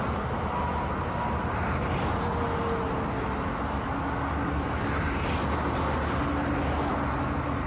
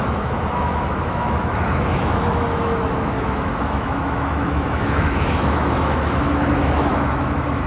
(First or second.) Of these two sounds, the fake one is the second